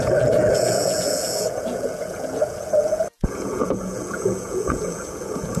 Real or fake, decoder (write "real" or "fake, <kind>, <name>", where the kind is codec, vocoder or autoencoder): fake, vocoder, Vocos